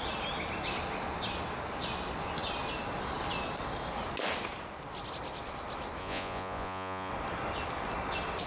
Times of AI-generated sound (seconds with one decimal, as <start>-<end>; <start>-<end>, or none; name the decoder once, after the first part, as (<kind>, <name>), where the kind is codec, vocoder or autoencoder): 6.0-7.1 (vocoder, Vocos)